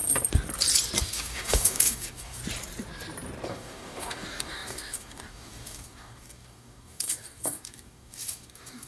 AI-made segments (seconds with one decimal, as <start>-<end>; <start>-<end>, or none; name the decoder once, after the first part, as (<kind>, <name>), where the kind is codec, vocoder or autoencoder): 1.0-2.4 (codec, DAC); 3.5-8.9